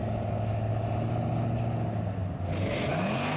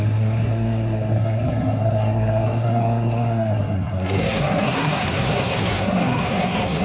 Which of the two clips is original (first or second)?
first